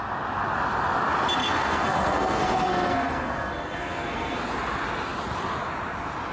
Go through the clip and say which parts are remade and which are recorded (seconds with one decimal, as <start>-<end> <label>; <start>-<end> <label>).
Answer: 0.0-1.4 recorded; 1.4-4.4 remade; 4.4-6.3 recorded